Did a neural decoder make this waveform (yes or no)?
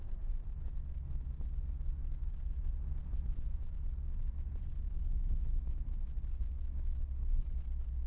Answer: no